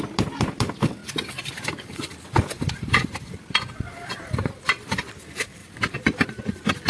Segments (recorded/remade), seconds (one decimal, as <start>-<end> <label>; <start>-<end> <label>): 0.0-1.0 recorded; 1.0-5.1 remade; 5.1-5.6 recorded; 5.6-6.9 remade